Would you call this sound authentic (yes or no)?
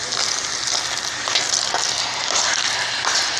yes